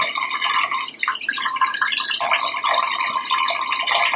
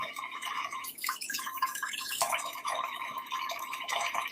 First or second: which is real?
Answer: first